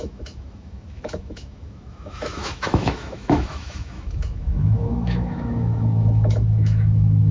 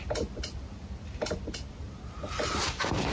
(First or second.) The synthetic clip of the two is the first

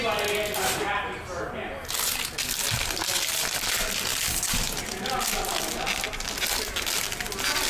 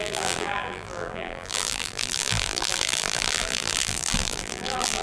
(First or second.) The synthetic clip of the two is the second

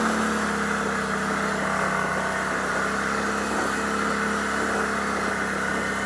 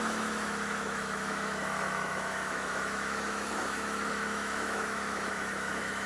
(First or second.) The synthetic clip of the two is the second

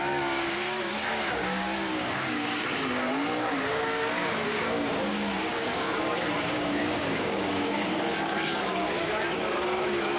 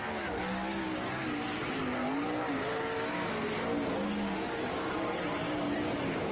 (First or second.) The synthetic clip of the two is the first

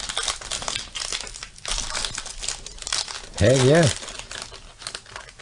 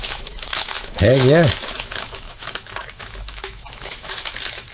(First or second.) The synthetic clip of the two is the second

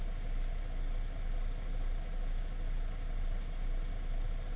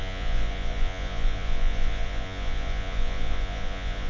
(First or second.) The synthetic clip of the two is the second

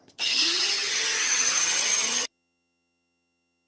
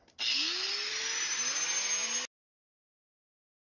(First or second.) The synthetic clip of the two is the first